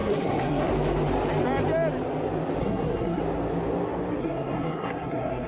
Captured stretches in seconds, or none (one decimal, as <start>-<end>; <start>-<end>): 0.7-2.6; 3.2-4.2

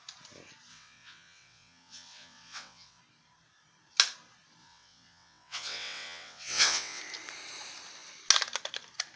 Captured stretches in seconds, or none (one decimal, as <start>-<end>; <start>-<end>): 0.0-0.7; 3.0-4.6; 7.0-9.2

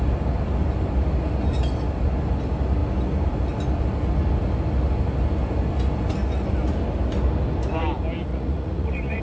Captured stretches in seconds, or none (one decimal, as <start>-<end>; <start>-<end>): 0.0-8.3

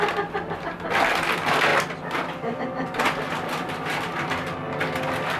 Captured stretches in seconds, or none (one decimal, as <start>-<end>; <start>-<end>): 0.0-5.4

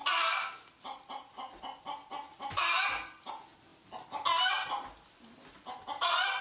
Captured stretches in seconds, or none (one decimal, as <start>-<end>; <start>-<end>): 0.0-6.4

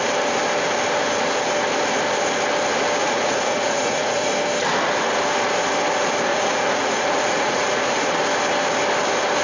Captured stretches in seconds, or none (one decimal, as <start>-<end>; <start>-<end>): 0.0-3.0; 4.3-6.3; 8.1-9.4